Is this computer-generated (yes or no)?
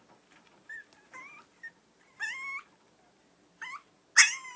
no